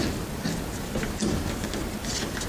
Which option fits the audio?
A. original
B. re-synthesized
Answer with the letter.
A